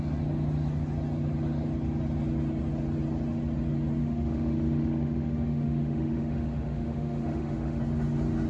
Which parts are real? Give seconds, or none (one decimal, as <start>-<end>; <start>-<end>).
0.0-4.0; 7.8-8.5

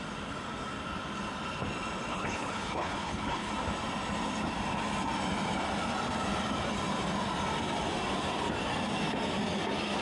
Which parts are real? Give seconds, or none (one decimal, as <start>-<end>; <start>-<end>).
0.0-2.1; 3.5-10.0

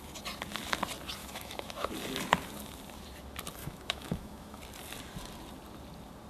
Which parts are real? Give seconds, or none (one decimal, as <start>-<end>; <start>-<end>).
0.0-1.2; 1.9-3.6; 4.6-6.3

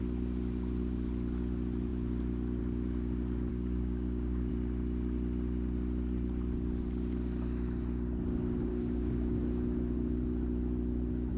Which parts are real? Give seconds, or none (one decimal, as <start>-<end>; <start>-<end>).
0.0-3.5; 4.5-8.7; 9.4-11.4